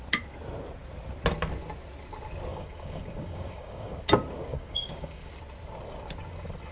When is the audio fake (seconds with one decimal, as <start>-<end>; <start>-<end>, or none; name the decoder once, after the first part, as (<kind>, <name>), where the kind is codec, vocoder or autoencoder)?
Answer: 2.5-4.0 (codec, DAC); 4.5-5.3